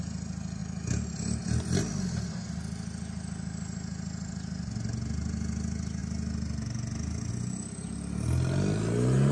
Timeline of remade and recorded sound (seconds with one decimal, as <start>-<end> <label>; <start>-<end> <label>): 0.0-9.3 recorded